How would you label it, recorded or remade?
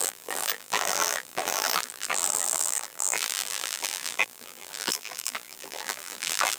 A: remade